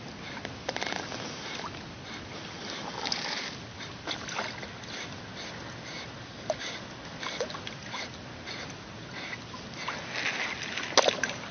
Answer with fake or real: real